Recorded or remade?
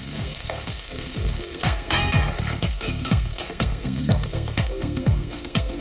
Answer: remade